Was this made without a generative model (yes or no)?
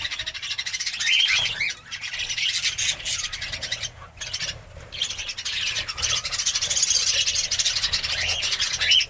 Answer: yes